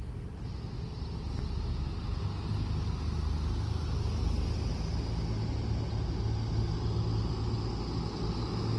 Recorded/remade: recorded